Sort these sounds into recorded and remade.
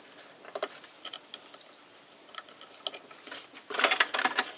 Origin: recorded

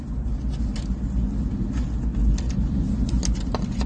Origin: recorded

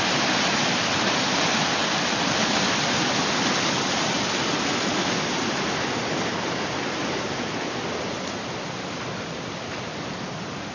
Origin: recorded